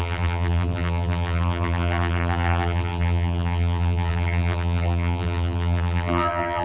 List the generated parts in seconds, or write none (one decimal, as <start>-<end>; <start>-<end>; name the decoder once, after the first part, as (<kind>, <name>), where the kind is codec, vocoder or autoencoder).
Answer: 0.0-6.6 (vocoder, BigVGAN v2)